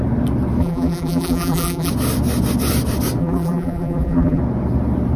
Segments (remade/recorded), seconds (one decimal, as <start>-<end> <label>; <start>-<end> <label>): 0.0-0.6 recorded; 0.6-1.9 remade; 1.9-3.2 recorded; 3.2-4.4 remade; 4.4-5.2 recorded